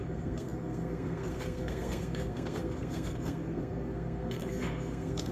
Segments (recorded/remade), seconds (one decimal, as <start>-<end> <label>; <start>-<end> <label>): 0.0-5.3 remade

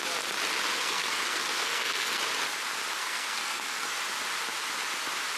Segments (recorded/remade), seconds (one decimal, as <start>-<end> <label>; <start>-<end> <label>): 0.0-0.7 recorded; 0.7-2.2 remade; 2.2-3.0 recorded; 3.0-4.0 remade; 4.0-5.4 recorded